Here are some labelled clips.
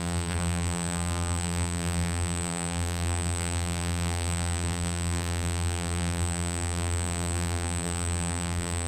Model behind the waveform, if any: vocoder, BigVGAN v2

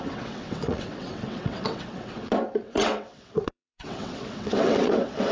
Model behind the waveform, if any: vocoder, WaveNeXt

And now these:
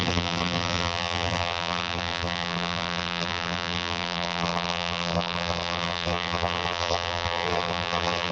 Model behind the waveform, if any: vocoder, BigVGAN v2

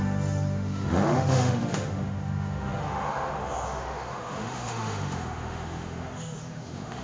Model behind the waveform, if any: autoencoder, DAC-VAE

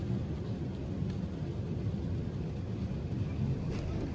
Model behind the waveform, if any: none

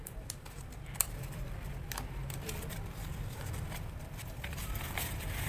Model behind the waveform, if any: vocoder, BigVGAN v2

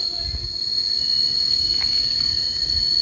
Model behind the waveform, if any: none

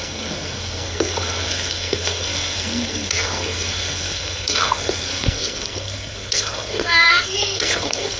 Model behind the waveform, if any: codec, SNAC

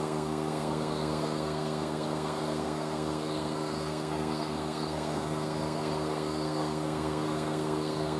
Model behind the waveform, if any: codec, SNAC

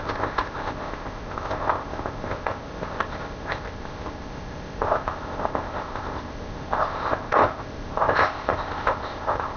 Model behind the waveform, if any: codec, ZipCodec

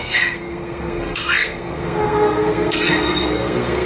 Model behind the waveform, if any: codec, SNAC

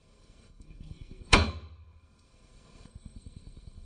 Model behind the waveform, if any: codec, SNAC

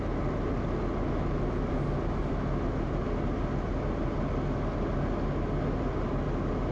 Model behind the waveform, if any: none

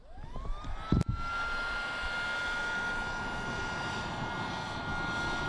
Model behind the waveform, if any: none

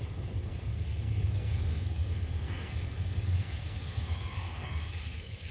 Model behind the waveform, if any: codec, SNAC